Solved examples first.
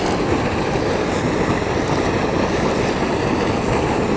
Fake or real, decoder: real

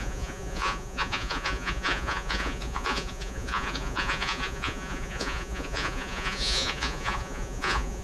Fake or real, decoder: fake, vocoder, Vocos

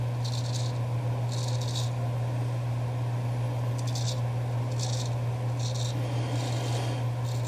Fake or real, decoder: real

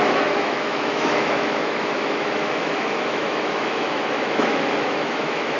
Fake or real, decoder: fake, autoencoder, DAC-VAE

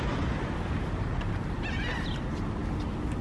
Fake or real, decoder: real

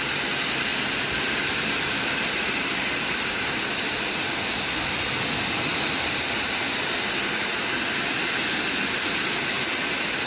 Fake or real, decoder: real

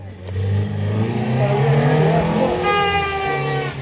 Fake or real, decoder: real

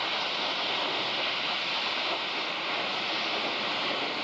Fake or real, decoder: real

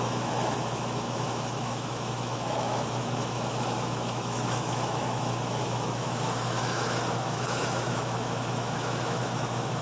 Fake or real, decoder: fake, autoencoder, DAC-VAE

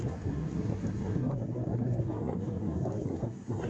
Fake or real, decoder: fake, codec, SNAC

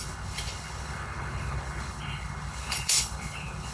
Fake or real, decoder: fake, codec, HILCodec